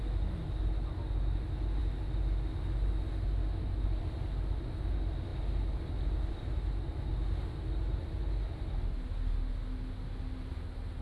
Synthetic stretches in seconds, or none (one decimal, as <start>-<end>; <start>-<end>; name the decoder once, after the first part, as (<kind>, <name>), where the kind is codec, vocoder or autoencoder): none